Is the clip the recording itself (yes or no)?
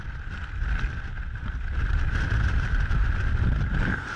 yes